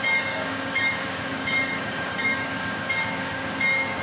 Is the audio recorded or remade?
remade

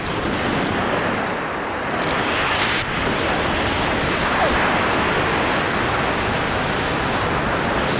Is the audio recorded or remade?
recorded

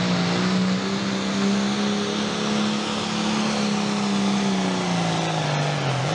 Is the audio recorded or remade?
recorded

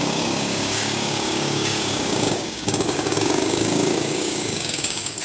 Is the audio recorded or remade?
remade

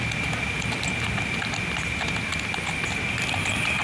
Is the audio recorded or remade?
recorded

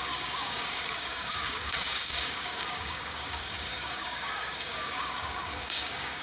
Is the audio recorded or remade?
remade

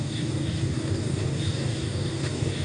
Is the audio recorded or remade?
remade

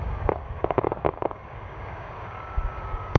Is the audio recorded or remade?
remade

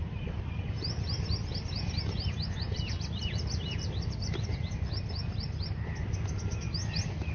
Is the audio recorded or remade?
recorded